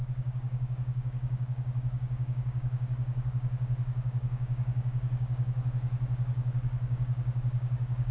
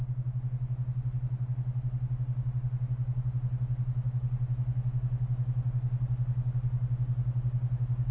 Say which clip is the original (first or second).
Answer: second